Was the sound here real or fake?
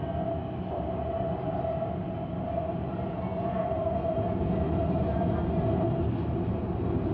real